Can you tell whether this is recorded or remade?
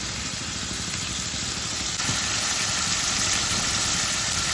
remade